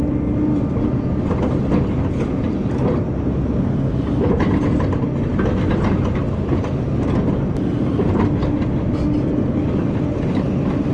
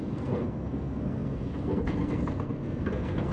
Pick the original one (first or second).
first